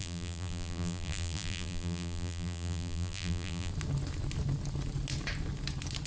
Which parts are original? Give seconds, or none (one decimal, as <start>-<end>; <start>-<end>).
3.7-6.1